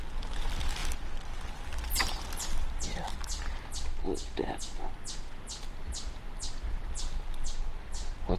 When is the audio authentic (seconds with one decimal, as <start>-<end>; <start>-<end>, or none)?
0.0-8.4